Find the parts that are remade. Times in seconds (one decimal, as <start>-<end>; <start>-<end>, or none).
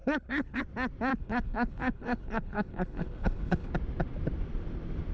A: 0.0-0.6; 1.1-3.7